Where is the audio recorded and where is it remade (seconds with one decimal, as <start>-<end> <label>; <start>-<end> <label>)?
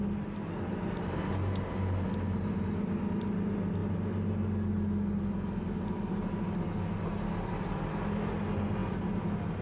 0.0-9.6 recorded